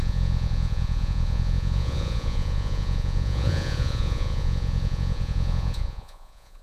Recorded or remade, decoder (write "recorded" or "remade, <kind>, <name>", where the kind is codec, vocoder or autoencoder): remade, vocoder, Vocos